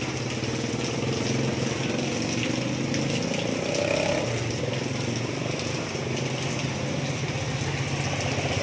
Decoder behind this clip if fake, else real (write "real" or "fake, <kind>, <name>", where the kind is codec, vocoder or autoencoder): real